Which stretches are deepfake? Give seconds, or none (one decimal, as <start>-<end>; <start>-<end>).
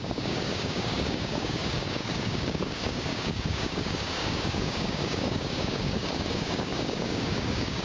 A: 0.0-7.8